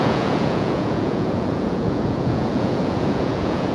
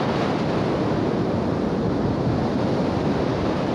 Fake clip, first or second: first